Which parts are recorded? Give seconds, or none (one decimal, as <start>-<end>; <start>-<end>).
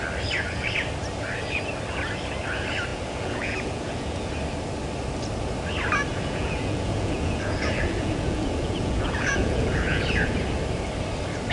0.0-2.9; 4.3-6.1; 10.4-11.5